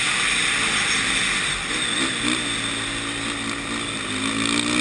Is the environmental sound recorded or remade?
recorded